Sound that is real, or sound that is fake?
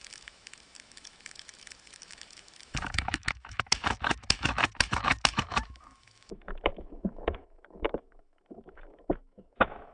fake